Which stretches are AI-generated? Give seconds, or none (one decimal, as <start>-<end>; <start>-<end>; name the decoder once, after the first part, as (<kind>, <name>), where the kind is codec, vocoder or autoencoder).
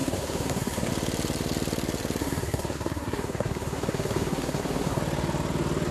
0.0-0.9 (codec, SNAC); 2.2-5.0